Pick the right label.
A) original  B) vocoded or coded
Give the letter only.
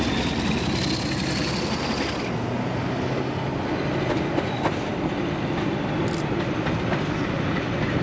A